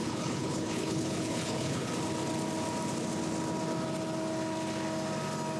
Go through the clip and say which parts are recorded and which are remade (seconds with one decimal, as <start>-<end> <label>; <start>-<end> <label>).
0.0-1.9 remade; 1.9-5.6 recorded